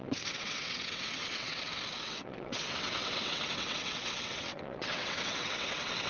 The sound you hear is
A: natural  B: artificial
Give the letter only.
B